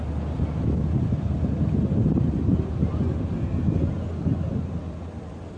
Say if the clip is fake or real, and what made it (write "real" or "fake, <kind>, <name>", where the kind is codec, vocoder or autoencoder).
real